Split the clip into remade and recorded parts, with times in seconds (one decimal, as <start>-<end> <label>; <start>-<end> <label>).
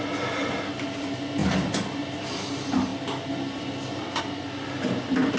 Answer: 0.0-5.4 recorded